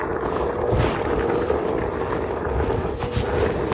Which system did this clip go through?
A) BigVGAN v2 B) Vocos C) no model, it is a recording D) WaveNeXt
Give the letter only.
C